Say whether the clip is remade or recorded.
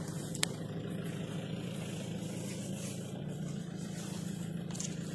remade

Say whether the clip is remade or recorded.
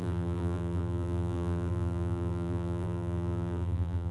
remade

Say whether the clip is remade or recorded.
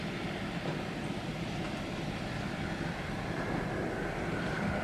remade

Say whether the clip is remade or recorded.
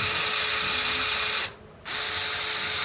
recorded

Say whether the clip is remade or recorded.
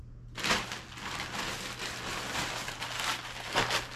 recorded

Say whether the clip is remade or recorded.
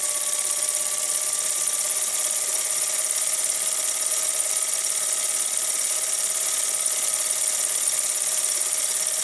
recorded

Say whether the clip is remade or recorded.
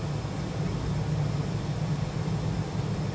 recorded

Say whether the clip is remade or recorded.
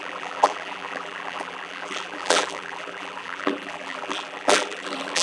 remade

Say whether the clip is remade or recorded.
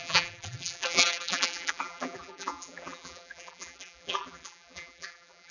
remade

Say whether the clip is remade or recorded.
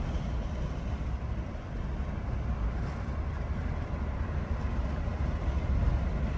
recorded